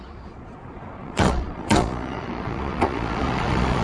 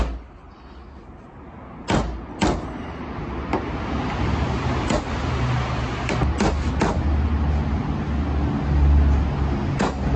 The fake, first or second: first